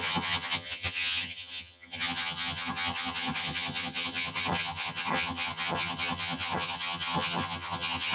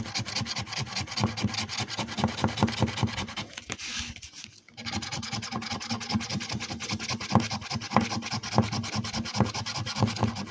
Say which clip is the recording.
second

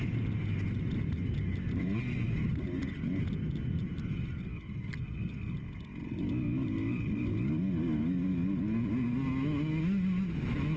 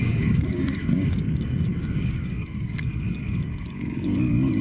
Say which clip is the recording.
first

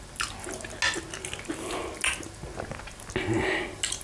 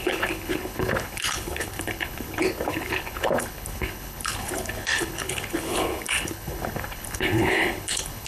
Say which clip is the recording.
first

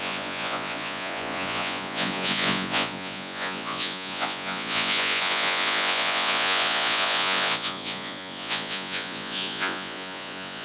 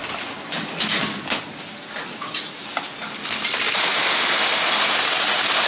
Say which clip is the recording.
second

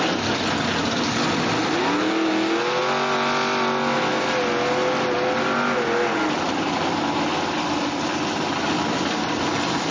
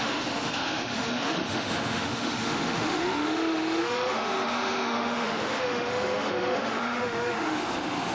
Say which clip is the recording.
first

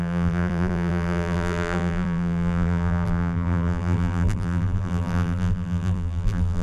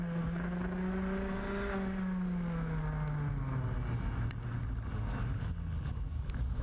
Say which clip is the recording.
second